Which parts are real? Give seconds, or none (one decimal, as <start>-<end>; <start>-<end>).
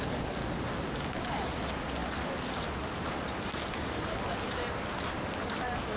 0.0-6.0